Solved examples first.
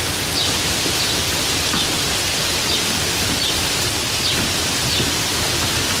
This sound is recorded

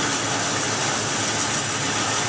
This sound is recorded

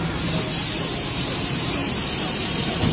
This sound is remade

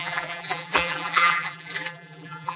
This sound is remade